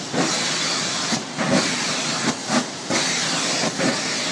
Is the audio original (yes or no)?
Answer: yes